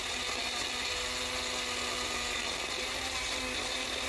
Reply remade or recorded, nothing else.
recorded